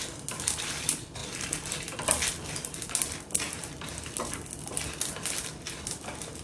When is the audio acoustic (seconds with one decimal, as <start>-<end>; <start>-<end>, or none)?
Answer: 0.0-6.4